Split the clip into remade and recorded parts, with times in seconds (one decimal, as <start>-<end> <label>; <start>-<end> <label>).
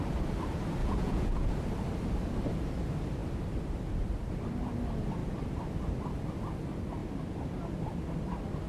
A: 0.0-0.8 recorded; 0.8-1.5 remade; 1.5-8.7 recorded